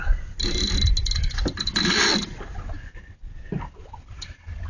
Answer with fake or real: real